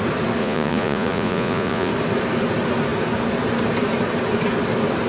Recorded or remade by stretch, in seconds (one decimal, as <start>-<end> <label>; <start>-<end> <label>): 0.0-0.4 recorded; 0.4-1.9 remade; 1.9-5.1 recorded